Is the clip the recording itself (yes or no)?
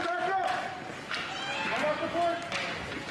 yes